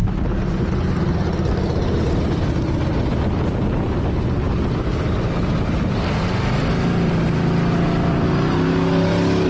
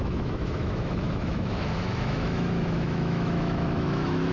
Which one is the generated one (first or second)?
second